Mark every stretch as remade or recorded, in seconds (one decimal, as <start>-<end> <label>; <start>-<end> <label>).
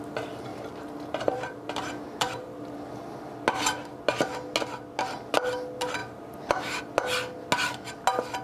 0.0-0.5 recorded; 0.5-2.9 remade; 2.9-6.0 recorded; 6.0-6.8 remade; 6.8-8.4 recorded